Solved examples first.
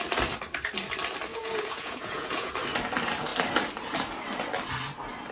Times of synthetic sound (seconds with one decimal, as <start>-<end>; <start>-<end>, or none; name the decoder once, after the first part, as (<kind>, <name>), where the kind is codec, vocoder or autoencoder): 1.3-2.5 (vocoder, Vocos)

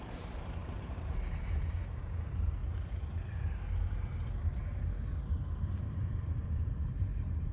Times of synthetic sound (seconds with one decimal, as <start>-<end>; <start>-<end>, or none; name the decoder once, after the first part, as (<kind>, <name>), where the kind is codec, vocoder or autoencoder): 0.0-2.6 (vocoder, BigVGAN v2); 5.6-7.5

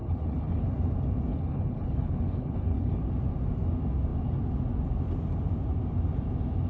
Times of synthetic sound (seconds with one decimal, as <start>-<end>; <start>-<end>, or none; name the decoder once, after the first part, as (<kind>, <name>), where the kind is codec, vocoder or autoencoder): 0.0-0.6 (codec, HILCodec); 1.3-3.0